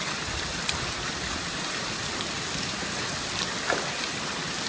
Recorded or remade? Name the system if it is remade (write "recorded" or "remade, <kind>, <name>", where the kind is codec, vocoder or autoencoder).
recorded